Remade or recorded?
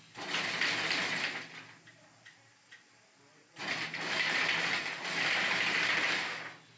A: recorded